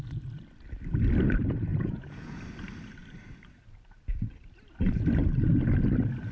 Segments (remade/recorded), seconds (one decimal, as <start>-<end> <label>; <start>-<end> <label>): 0.0-1.7 recorded; 1.7-2.4 remade; 2.4-6.3 recorded